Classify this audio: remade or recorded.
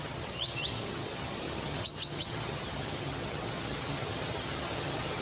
remade